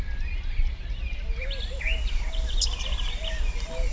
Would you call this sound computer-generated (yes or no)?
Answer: no